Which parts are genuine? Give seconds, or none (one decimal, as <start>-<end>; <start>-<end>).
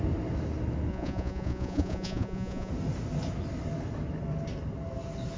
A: 0.0-0.9; 2.7-5.4